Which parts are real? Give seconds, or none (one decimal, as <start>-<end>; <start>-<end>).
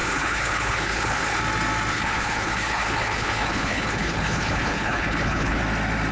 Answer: 1.4-1.9; 5.6-6.1